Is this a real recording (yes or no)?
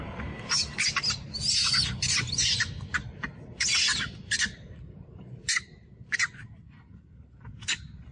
yes